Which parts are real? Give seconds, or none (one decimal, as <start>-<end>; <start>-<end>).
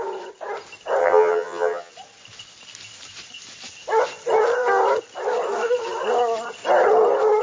0.0-1.0; 1.9-7.4